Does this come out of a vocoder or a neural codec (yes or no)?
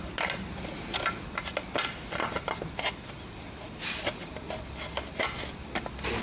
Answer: no